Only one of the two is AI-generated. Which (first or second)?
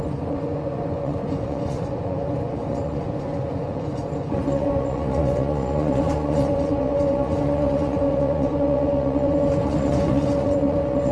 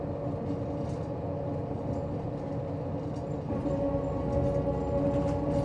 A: first